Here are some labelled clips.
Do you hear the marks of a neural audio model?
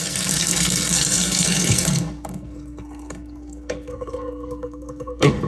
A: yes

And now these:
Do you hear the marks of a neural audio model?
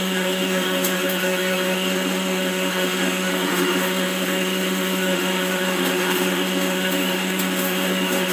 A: yes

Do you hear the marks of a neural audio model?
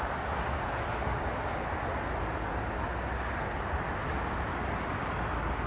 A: no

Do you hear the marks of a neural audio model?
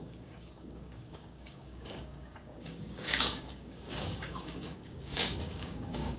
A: yes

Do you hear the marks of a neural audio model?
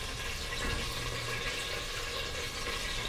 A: no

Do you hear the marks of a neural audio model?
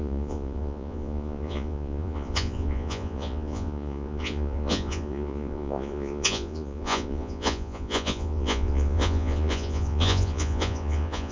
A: yes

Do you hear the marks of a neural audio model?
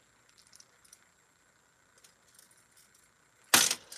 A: no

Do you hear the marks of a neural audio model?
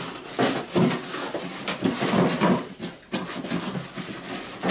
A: no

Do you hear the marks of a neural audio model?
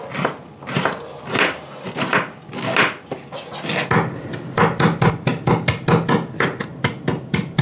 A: no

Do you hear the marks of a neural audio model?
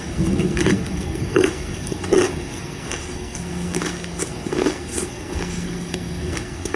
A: yes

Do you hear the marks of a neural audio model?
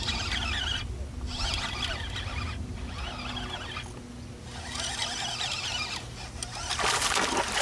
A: no